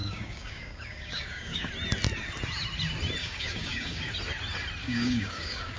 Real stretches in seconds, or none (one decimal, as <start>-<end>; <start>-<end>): 1.7-3.2; 4.1-4.8